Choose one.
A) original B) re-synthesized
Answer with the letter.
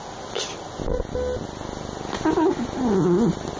A